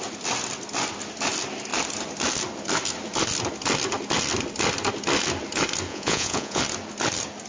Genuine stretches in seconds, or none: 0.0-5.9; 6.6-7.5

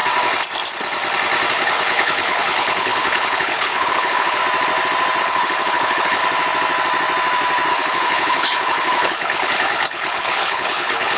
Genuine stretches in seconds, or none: 0.0-1.5; 4.4-5.2; 6.2-7.7

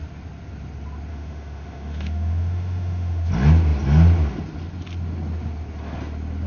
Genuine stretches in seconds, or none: 0.0-1.1; 3.3-6.5

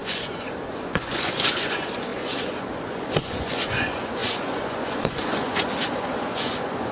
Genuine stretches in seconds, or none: none

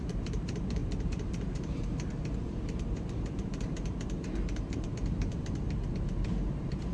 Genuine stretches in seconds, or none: none